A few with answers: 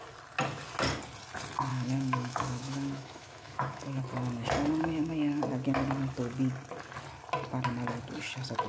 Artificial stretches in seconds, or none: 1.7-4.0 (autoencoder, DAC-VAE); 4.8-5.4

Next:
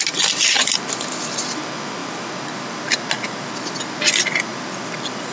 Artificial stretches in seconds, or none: none

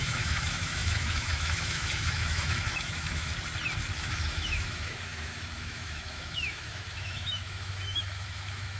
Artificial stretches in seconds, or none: 0.0-3.3 (autoencoder, DAC-VAE); 4.0-8.8

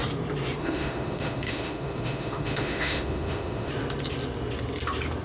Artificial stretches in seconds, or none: 0.6-3.7 (autoencoder, DAC-VAE)

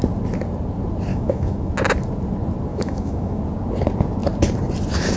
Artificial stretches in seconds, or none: 1.1-1.7 (autoencoder, DAC-VAE); 2.7-3.4

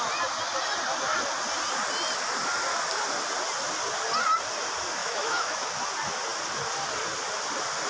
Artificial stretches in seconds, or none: 5.0-5.7 (autoencoder, DAC-VAE)